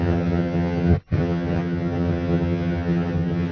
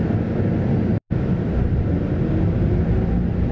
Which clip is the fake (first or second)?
first